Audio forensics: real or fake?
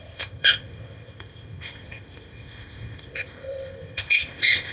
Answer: fake